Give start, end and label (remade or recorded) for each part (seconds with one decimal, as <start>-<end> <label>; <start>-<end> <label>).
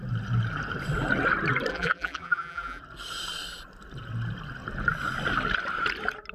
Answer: 0.0-1.7 recorded; 1.7-2.8 remade; 2.8-6.3 recorded